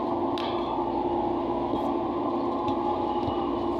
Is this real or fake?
real